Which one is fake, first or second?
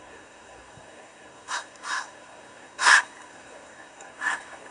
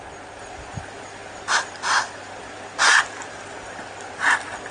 first